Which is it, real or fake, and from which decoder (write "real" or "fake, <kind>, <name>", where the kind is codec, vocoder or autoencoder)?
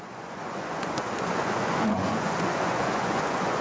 fake, vocoder, Vocos